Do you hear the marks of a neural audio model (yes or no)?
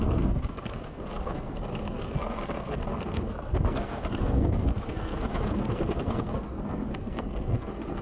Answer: yes